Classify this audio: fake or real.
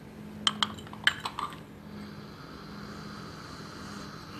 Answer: real